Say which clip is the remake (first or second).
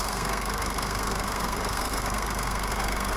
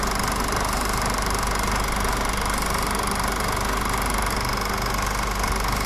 first